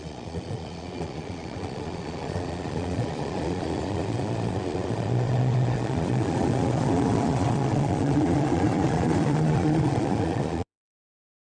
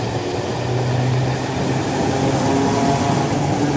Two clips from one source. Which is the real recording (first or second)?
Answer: second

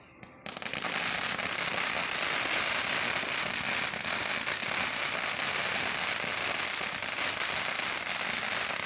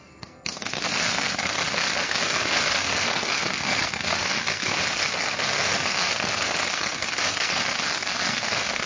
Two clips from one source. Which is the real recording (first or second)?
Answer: first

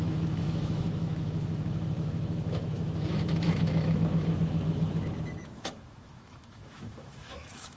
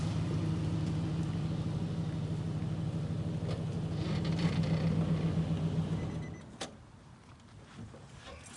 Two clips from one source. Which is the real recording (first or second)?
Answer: second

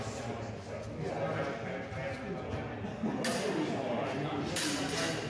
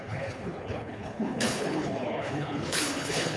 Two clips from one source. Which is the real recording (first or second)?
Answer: first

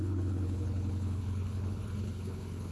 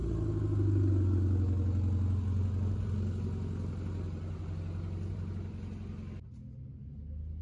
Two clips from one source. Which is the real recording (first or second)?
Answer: second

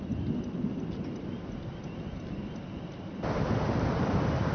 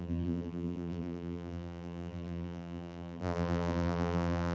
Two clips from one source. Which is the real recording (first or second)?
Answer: first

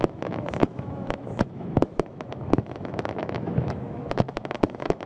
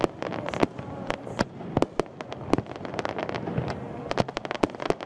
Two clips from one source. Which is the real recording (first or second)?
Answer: second